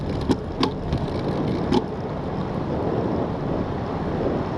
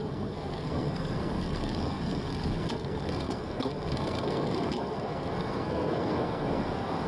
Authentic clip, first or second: first